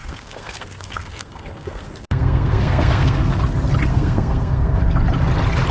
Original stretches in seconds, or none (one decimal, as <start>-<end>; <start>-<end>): 3.4-3.9; 4.8-5.7